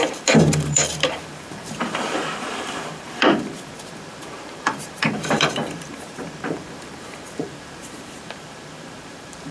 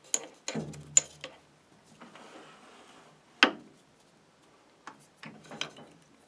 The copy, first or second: first